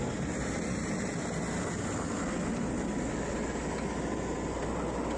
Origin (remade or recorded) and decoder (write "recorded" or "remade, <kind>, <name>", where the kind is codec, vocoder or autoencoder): recorded